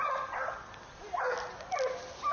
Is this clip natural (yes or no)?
yes